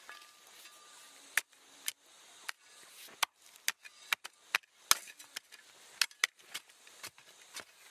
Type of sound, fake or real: real